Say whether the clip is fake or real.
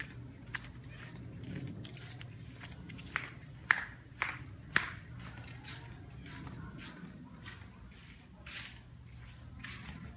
real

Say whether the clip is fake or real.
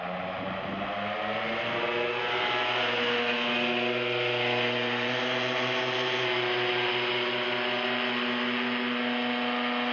real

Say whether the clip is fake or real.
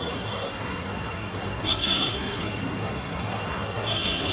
fake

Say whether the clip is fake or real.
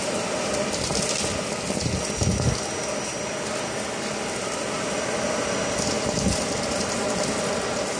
real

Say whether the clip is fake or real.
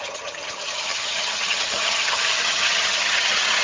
fake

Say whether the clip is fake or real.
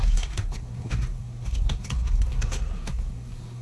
fake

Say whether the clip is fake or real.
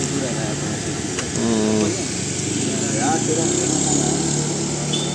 real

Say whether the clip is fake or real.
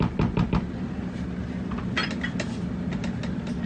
real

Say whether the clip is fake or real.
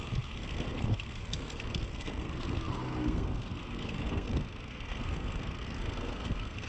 fake